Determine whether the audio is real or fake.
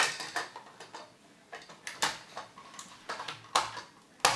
real